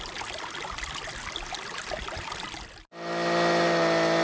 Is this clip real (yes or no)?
yes